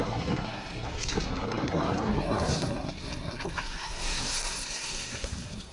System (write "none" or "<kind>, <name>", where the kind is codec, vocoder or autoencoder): codec, SNAC